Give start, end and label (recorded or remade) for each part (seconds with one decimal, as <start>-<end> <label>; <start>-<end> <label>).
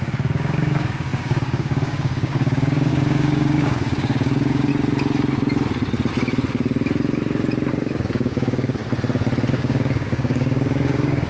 0.0-4.7 remade; 4.7-7.7 recorded; 7.7-8.8 remade; 8.8-9.5 recorded; 9.5-11.3 remade